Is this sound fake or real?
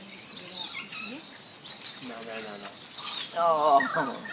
real